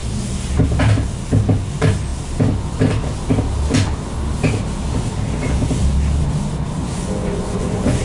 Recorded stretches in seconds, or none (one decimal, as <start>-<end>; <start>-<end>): 0.0-6.8